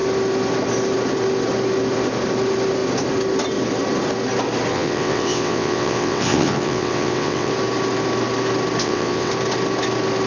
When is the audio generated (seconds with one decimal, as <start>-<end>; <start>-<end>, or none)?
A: 4.7-7.5; 8.8-9.3